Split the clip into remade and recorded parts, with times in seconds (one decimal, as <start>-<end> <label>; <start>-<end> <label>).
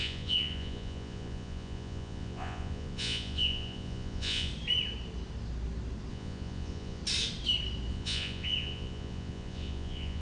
0.0-4.5 remade; 4.5-6.1 recorded; 6.1-7.0 remade; 7.0-7.9 recorded; 7.9-10.2 remade